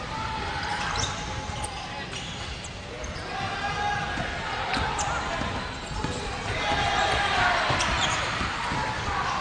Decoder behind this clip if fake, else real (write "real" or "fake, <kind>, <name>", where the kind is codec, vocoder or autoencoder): real